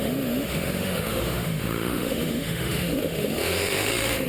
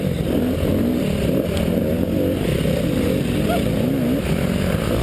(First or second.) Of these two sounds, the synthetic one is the first